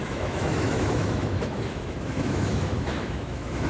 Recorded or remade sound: remade